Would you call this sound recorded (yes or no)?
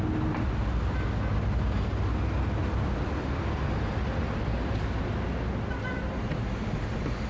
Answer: yes